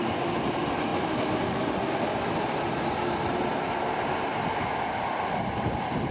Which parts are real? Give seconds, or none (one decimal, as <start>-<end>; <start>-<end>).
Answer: 0.0-6.1